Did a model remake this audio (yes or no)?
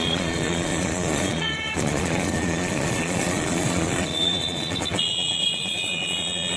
yes